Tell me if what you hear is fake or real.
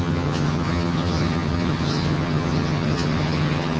fake